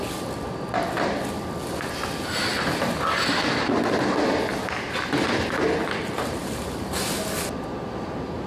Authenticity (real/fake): real